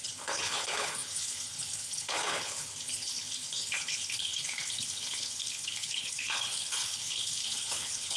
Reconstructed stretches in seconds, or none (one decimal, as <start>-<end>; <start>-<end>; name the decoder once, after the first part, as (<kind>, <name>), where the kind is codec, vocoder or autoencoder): 0.0-8.2 (codec, HILCodec)

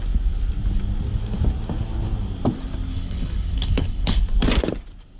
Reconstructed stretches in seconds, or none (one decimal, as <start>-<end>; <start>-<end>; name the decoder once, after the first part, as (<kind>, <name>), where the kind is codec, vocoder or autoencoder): 2.9-4.2 (codec, HILCodec)

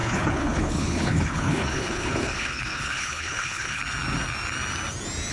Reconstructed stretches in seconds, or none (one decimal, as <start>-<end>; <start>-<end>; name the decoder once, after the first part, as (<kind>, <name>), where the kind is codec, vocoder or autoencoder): 0.0-3.8 (codec, HILCodec)

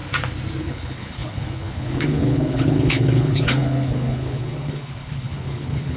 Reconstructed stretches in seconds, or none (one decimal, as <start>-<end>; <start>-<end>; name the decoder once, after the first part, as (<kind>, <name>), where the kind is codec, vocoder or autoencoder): 0.6-6.0 (codec, HILCodec)

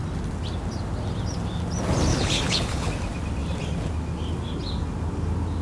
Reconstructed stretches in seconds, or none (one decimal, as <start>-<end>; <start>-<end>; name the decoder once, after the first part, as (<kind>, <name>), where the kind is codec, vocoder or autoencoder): 2.1-2.9 (codec, HILCodec)

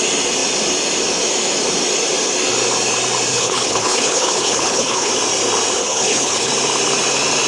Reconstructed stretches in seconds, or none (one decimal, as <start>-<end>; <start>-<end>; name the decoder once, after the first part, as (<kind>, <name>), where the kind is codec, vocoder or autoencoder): 3.3-5.1 (codec, HILCodec); 5.8-6.5

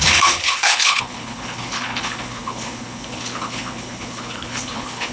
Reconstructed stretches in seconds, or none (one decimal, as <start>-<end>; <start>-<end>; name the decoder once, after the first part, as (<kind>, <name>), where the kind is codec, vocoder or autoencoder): 0.0-5.1 (codec, HILCodec)